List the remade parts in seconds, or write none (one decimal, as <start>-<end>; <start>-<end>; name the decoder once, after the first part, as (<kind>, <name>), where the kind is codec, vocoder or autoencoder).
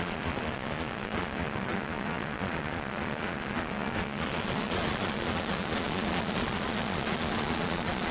0.0-8.1 (vocoder, Vocos)